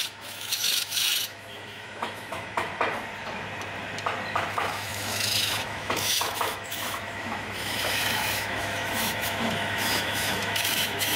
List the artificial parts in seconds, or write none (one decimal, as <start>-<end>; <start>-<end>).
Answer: 0.0-2.7; 4.3-11.2